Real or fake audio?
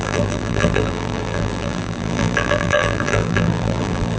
fake